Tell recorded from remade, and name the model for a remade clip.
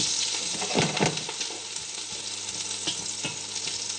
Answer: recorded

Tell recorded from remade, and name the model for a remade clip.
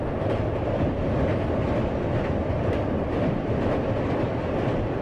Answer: recorded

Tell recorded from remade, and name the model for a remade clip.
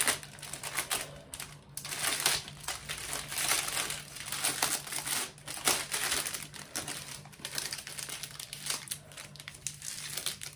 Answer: recorded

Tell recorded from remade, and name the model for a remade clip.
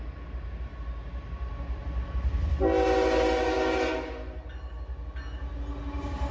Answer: recorded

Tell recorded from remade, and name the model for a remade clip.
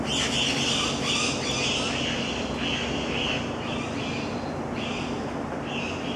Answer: recorded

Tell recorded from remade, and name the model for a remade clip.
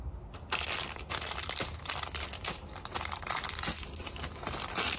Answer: recorded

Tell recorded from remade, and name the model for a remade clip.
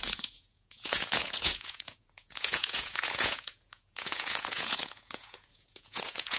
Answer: remade, vocoder, Vocos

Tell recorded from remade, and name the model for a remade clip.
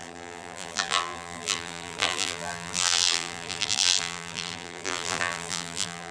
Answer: remade, vocoder, BigVGAN v2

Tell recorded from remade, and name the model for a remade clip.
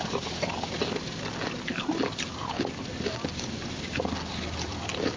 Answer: recorded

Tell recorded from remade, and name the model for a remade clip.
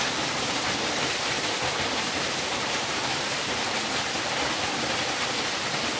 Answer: remade, vocoder, BigVGAN v2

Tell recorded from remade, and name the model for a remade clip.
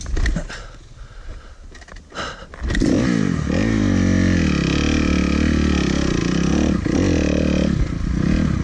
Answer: recorded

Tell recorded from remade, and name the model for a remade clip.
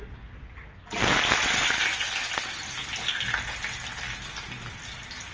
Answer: recorded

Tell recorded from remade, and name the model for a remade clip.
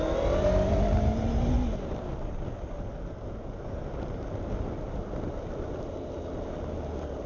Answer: recorded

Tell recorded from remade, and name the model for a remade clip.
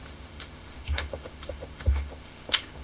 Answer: remade, autoencoder, DAC-VAE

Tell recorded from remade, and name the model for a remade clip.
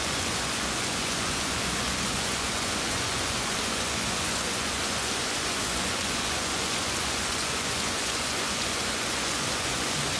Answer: remade, vocoder, Vocos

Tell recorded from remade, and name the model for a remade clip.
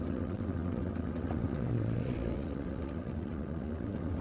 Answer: remade, vocoder, WaveNeXt